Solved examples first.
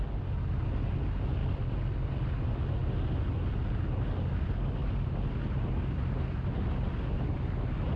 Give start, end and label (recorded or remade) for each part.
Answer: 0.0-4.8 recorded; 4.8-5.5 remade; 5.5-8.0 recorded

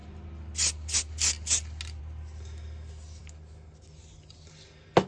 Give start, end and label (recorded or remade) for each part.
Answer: 0.0-5.1 recorded

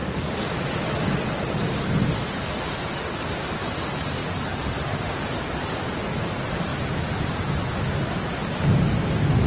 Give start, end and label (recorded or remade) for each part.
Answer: 0.0-4.2 recorded; 4.2-4.9 remade; 4.9-9.5 recorded

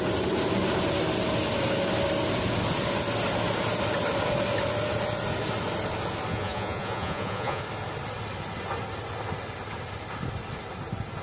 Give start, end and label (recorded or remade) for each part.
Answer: 0.0-6.3 recorded; 6.3-7.6 remade; 7.6-11.2 recorded

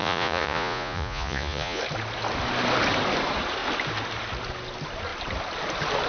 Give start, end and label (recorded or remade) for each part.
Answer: 0.0-1.8 remade; 1.8-6.1 recorded